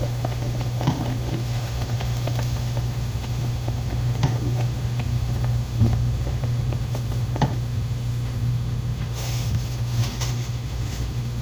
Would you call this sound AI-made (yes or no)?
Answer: yes